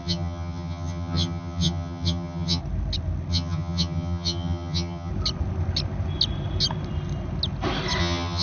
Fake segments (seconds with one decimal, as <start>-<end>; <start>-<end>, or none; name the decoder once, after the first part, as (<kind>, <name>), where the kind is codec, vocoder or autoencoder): 0.0-2.6 (vocoder, HiFi-GAN); 3.3-5.1; 8.0-8.4